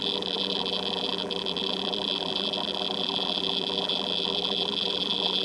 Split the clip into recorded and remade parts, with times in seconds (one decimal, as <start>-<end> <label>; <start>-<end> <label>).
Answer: 0.0-5.4 remade